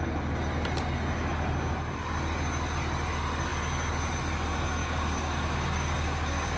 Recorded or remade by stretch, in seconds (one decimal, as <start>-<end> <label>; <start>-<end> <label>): 0.0-4.8 recorded; 4.8-6.6 remade